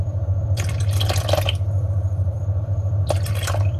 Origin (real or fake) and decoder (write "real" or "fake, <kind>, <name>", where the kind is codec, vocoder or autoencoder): fake, vocoder, BigVGAN v2